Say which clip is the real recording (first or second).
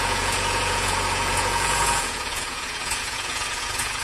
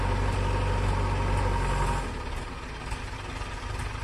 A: second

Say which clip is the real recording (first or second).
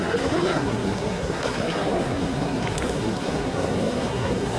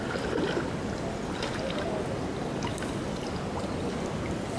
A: second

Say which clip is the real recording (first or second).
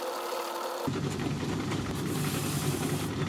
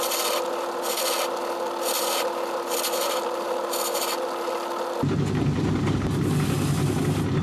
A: second